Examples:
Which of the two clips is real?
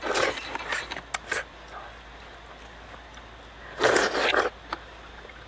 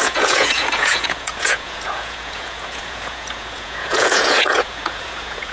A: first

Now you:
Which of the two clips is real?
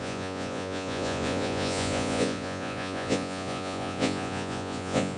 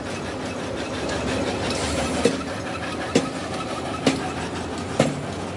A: second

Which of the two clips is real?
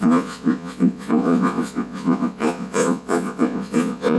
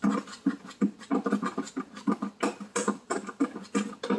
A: second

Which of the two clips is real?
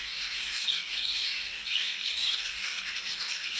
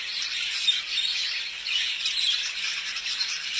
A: second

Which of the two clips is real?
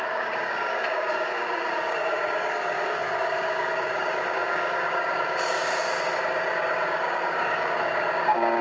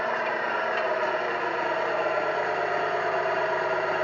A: second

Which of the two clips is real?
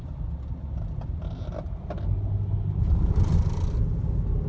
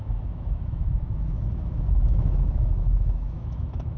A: first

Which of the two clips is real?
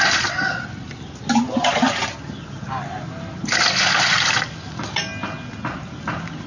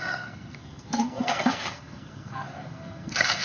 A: first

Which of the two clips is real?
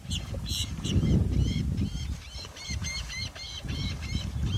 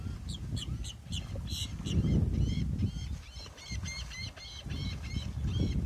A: second